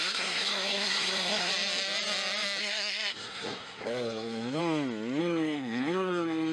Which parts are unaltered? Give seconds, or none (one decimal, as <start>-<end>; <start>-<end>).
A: 1.5-2.6; 4.6-5.2